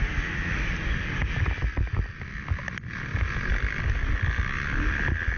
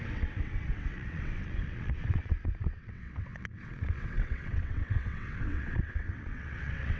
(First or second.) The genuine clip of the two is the first